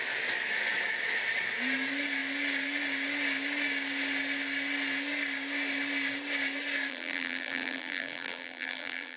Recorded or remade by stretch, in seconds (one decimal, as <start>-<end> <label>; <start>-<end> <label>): 0.0-6.9 recorded; 6.9-9.2 remade